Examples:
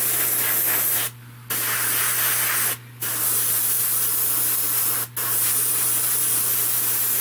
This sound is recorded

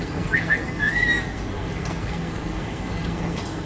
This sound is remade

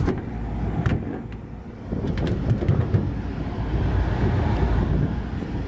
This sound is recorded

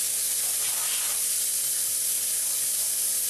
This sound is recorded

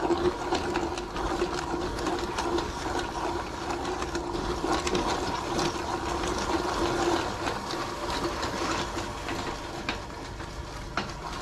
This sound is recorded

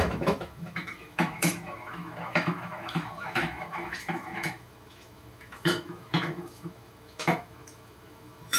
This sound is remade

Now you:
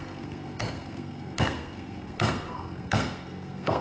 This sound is remade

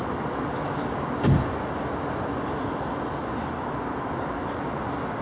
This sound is recorded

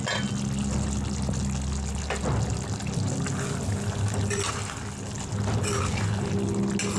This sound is recorded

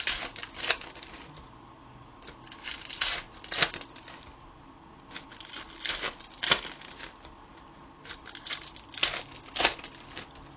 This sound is recorded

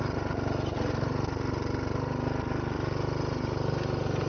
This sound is recorded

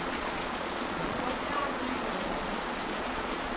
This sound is remade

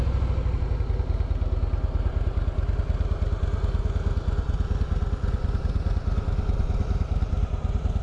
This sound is recorded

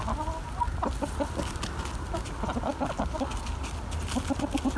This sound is recorded